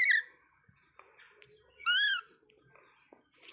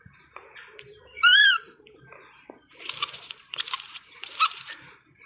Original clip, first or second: first